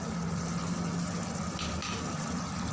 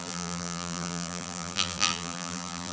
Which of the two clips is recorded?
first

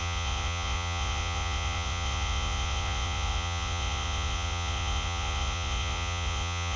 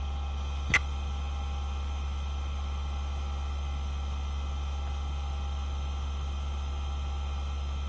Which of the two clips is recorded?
second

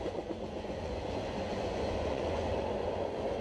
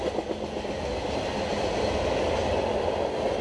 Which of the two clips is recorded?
second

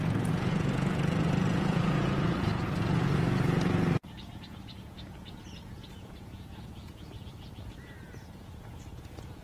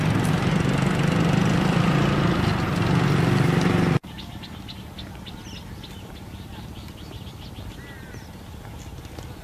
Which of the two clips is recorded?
second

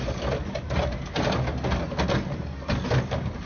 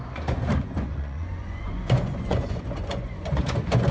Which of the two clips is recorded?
first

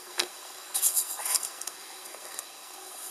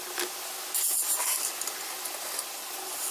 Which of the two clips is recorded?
second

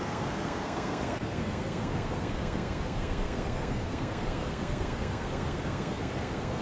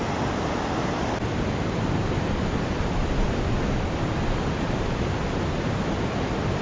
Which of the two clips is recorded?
second